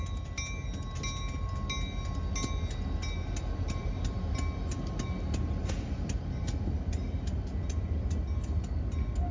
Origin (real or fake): real